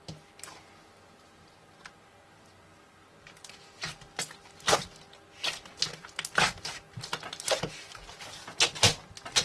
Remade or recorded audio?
recorded